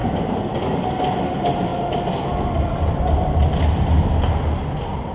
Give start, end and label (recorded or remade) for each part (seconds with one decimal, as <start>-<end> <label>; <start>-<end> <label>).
0.0-5.1 recorded